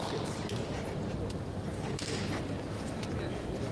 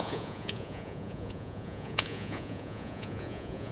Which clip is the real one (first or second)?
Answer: first